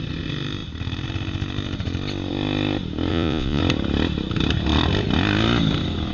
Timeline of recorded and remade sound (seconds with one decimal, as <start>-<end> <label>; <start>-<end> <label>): 0.0-3.1 recorded; 3.1-3.6 remade; 3.6-6.1 recorded